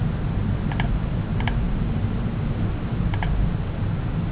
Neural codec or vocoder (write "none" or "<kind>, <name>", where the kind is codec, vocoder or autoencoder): none